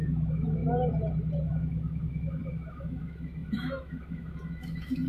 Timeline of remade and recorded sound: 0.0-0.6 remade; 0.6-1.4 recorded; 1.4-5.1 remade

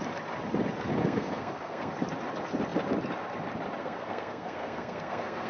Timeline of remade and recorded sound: 0.0-1.0 recorded; 1.0-1.9 remade; 1.9-3.8 recorded; 3.8-5.5 remade